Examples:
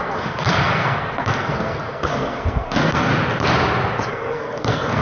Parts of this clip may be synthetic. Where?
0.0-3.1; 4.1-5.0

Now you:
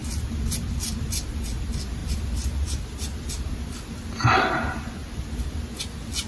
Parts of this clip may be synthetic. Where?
none

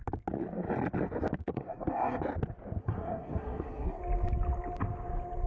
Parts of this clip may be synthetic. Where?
1.5-2.2; 2.8-4.0